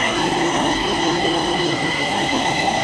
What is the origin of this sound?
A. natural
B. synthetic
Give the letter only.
B